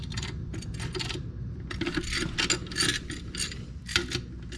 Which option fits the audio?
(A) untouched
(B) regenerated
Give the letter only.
A